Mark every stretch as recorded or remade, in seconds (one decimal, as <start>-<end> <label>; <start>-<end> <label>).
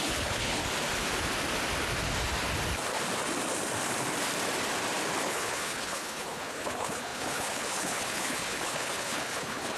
0.0-0.6 remade; 0.6-5.2 recorded; 5.2-9.8 remade